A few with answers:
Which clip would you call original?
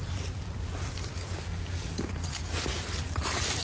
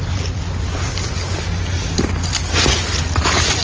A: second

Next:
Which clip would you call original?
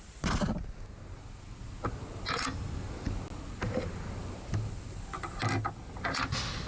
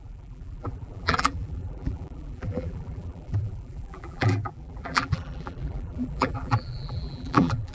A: first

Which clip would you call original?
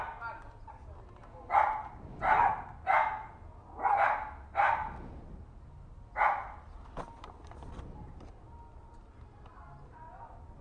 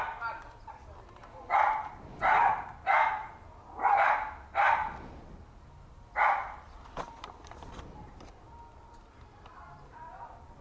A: first